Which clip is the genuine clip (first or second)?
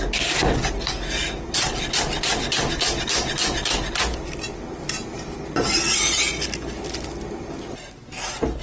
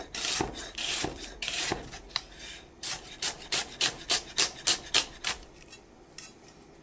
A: first